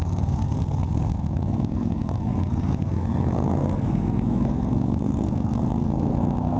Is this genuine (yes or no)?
no